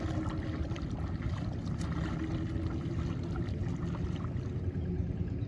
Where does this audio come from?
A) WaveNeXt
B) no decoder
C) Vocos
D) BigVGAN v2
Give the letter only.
B